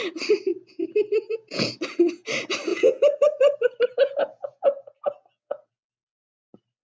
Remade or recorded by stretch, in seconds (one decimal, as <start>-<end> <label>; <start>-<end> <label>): 0.0-0.5 recorded; 0.5-1.7 remade; 1.7-2.7 recorded; 2.7-5.7 remade; 5.7-6.8 recorded